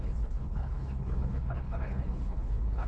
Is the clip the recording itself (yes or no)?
no